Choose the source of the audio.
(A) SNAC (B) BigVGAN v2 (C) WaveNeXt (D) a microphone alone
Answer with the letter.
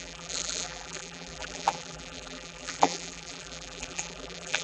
B